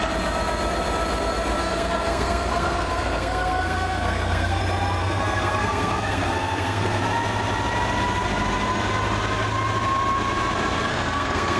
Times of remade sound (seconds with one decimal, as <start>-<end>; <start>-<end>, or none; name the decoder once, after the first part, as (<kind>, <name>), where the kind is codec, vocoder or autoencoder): 1.6-4.6 (codec, SNAC); 5.0-7.0; 10.9-11.6